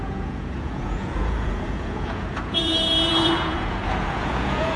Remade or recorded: remade